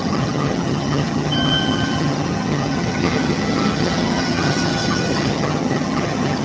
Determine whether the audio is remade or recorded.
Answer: remade